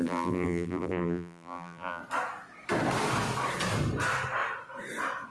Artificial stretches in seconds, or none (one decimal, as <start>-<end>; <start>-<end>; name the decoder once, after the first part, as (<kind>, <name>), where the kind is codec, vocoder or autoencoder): 0.0-2.0 (vocoder, BigVGAN v2)